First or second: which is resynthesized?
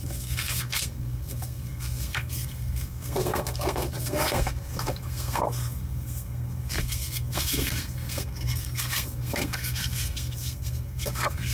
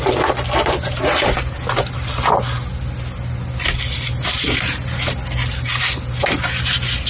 first